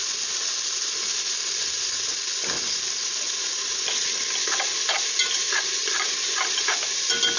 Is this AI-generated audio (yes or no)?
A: no